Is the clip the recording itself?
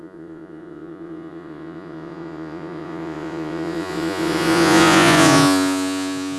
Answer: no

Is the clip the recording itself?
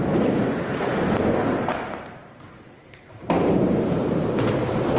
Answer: no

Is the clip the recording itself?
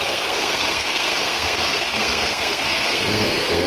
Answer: no